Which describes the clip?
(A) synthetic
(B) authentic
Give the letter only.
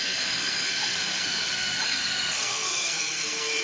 A